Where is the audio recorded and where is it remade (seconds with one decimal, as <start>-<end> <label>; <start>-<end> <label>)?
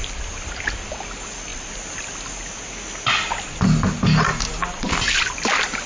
0.0-5.9 recorded